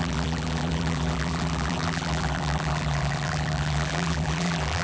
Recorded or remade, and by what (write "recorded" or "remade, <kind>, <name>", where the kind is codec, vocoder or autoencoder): remade, vocoder, BigVGAN v2